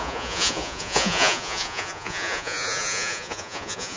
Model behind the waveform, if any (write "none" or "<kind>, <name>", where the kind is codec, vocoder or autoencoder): vocoder, Vocos